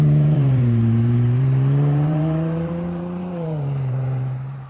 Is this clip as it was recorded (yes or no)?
no